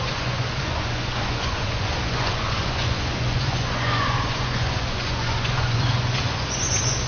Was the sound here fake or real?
fake